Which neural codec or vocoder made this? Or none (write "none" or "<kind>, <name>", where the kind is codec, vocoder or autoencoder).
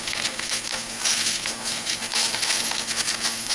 codec, SNAC